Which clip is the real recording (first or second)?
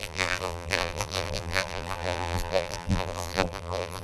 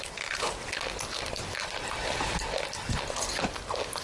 second